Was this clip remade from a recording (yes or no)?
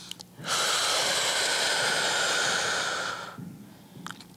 no